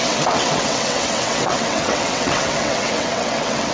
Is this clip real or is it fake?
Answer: fake